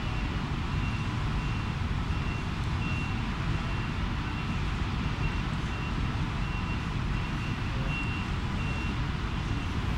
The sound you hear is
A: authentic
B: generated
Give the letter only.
A